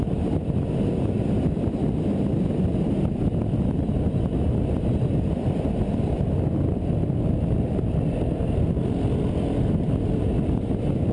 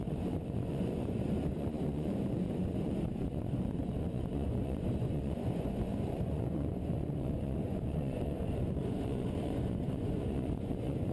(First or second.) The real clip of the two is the first